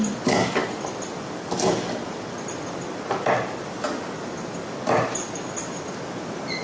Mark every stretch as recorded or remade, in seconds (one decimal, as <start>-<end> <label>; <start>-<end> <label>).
0.0-6.6 recorded